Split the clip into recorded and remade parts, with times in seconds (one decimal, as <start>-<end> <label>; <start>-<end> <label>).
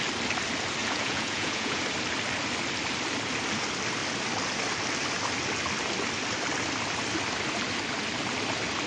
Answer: 0.0-0.8 recorded; 0.8-1.8 remade; 1.8-8.9 recorded